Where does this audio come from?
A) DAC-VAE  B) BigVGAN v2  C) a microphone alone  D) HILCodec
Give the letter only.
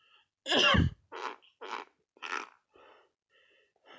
C